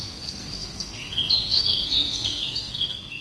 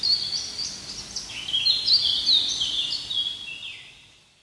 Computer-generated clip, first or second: first